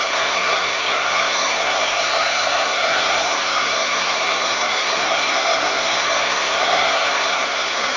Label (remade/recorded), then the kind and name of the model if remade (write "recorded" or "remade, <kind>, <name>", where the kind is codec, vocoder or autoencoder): remade, codec, SNAC